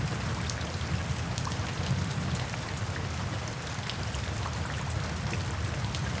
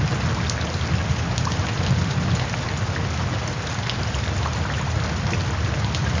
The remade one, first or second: first